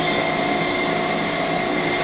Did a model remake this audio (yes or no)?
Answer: no